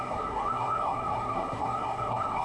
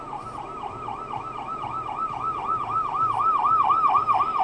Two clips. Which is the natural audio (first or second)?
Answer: second